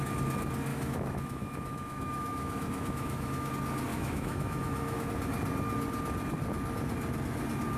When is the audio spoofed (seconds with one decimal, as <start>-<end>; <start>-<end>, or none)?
0.7-3.5; 3.9-5.1